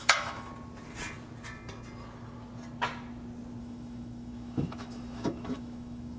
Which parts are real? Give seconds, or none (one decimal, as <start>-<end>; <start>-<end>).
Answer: 0.5-3.6